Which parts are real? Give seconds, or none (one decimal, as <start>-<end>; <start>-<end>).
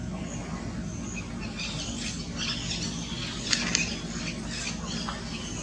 0.0-5.6